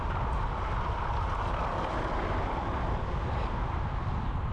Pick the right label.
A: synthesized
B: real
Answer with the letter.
B